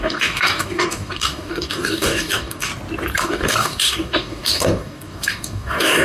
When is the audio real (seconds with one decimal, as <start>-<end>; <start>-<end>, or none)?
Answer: 2.7-3.2